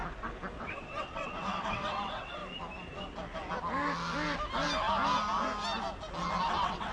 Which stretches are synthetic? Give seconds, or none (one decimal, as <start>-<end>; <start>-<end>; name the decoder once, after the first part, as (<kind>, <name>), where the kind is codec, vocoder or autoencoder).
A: 0.6-2.4 (vocoder, WaveNeXt); 6.5-6.9